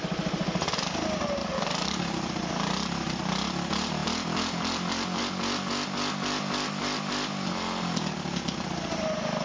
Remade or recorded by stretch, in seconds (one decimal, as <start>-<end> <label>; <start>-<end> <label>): 0.0-1.4 recorded; 1.4-2.0 remade; 2.0-9.4 recorded